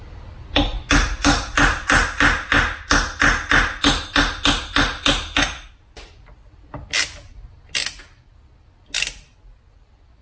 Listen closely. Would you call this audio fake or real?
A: real